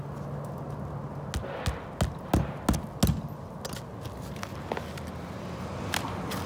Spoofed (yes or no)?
no